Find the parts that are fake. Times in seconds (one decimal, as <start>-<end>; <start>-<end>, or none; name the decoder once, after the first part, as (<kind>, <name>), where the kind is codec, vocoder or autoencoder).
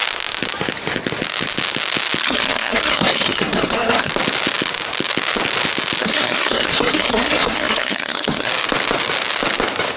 2.2-4.1 (codec, SNAC); 6.0-8.5